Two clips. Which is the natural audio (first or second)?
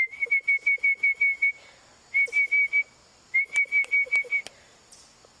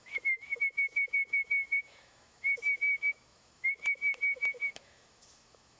first